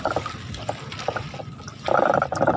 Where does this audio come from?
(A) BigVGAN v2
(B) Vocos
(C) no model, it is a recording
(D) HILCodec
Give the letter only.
C